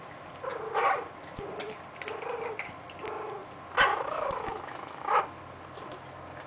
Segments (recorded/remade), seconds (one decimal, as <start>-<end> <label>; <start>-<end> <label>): 0.0-3.9 recorded; 3.9-5.2 remade; 5.2-6.5 recorded